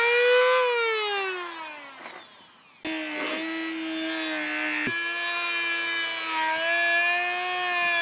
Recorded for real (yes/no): yes